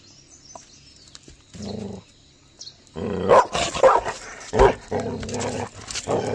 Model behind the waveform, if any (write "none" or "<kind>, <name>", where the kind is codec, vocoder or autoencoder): none